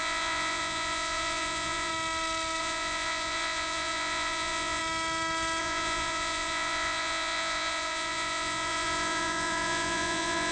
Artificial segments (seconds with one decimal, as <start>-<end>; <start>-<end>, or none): 0.0-1.9; 2.6-4.8; 5.6-10.5